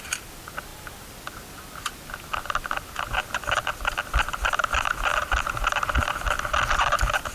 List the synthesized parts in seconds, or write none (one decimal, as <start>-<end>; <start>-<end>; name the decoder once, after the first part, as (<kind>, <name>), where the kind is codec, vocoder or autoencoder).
0.0-0.7 (vocoder, BigVGAN v2); 4.0-5.1; 6.7-7.3